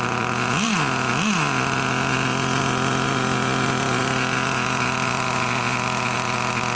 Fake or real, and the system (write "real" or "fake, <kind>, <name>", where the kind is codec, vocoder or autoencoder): real